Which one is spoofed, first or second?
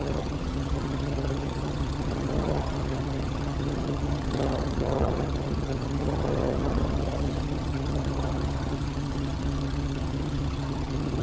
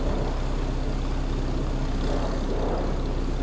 first